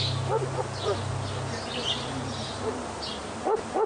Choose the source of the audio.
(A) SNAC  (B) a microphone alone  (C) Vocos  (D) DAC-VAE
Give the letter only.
B